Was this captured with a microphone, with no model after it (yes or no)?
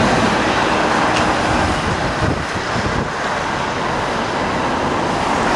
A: yes